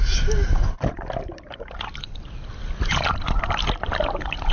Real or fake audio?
real